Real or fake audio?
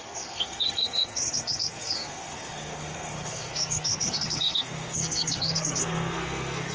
fake